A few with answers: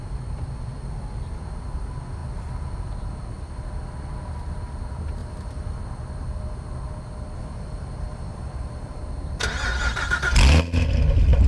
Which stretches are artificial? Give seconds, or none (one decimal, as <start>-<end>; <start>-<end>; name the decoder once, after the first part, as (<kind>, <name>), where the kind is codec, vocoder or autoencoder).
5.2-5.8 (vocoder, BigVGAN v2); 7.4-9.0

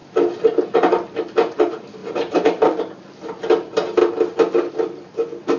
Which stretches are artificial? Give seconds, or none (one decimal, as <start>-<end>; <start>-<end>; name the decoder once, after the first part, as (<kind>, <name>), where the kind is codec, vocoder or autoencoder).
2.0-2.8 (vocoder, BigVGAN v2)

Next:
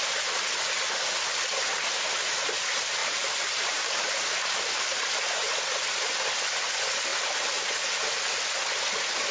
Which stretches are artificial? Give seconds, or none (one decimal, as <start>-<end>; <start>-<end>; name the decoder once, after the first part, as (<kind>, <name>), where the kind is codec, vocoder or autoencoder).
3.0-4.2 (vocoder, BigVGAN v2); 7.1-8.1

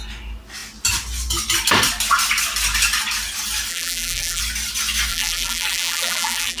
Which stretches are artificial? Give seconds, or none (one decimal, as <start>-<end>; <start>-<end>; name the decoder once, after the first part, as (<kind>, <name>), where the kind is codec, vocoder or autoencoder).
3.7-4.4 (vocoder, BigVGAN v2); 5.1-6.6